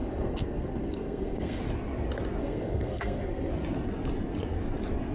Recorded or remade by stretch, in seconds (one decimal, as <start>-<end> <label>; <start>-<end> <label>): 0.0-1.6 remade; 1.6-2.4 recorded; 2.4-3.5 remade; 3.5-5.1 recorded